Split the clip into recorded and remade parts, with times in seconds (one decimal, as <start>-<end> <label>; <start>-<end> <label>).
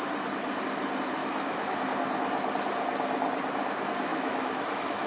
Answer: 0.0-1.2 recorded; 1.2-1.8 remade; 1.8-4.1 recorded; 4.1-5.1 remade